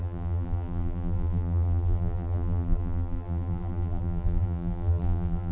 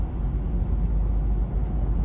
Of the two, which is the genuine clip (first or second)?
second